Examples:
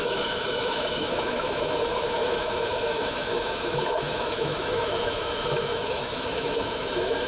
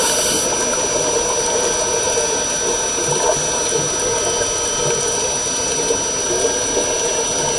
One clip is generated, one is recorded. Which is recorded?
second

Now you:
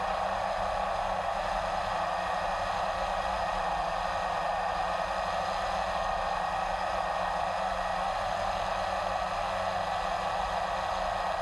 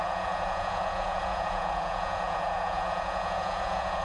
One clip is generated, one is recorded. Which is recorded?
first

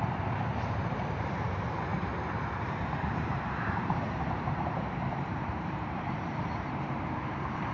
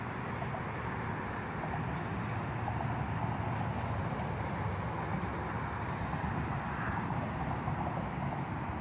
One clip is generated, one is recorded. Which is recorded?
second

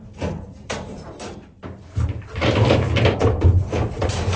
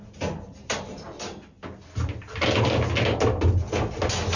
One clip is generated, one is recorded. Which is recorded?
second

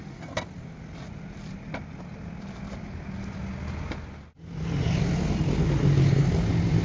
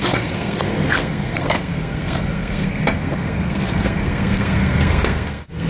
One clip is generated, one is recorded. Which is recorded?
first